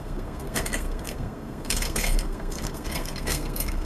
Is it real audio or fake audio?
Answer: fake